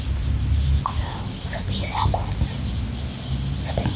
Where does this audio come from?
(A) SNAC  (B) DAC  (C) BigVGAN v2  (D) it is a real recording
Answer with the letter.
D